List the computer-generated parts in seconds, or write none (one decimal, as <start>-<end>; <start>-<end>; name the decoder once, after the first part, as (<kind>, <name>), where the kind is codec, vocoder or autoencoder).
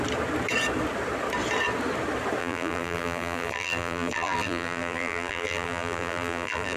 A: 2.4-6.8 (vocoder, BigVGAN v2)